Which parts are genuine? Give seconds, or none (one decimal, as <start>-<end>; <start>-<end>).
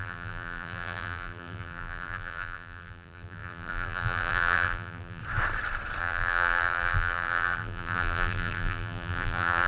5.2-6.0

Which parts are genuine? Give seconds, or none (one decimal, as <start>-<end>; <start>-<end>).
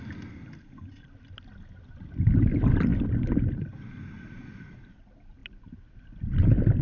0.0-5.4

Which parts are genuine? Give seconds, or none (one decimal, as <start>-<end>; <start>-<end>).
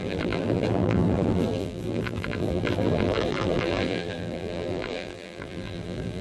none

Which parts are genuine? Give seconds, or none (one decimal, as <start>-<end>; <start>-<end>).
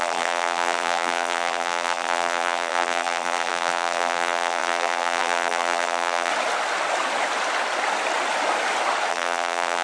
6.3-9.1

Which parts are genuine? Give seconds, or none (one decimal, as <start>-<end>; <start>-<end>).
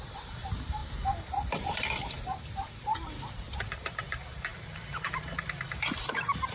none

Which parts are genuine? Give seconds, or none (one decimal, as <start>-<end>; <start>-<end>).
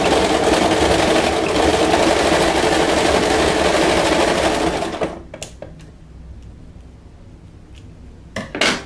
0.0-8.9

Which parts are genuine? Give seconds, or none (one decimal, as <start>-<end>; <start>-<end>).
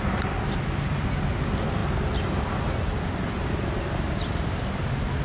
0.0-5.2